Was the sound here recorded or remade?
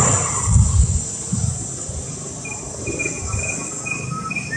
recorded